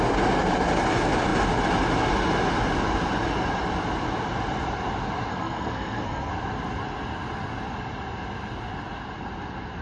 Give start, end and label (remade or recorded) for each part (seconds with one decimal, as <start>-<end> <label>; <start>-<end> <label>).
0.0-5.3 recorded; 5.3-6.3 remade; 6.3-9.8 recorded